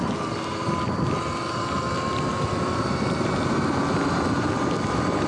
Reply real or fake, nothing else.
real